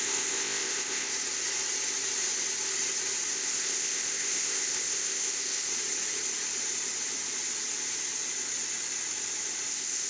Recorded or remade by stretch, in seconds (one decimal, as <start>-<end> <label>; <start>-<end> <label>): 0.0-1.1 remade; 1.1-3.3 recorded; 3.3-5.7 remade; 5.7-9.7 recorded; 9.7-10.1 remade